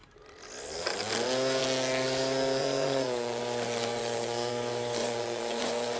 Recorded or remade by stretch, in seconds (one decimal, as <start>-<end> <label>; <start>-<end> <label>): 0.0-2.6 recorded; 2.6-3.4 remade; 3.4-4.0 recorded; 4.0-4.5 remade; 4.5-5.0 recorded; 5.0-6.0 remade